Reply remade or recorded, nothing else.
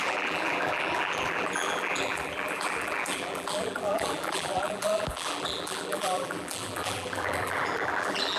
remade